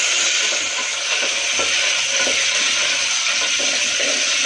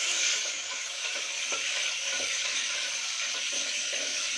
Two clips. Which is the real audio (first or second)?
first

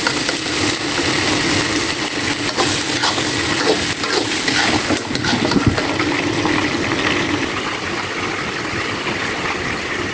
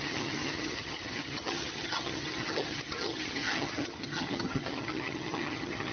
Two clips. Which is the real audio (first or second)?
first